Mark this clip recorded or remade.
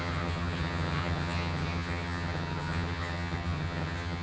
remade